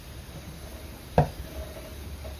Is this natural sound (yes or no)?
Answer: yes